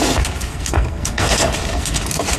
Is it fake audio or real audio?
fake